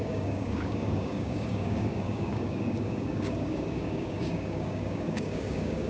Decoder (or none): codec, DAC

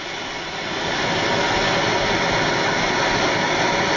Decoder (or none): none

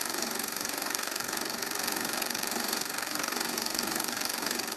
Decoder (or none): codec, DAC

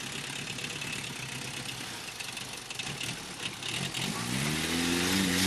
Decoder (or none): none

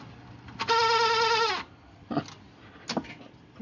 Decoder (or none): none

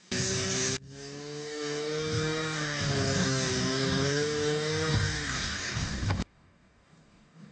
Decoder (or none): codec, DAC